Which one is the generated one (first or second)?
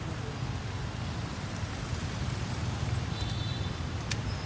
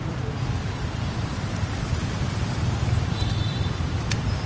second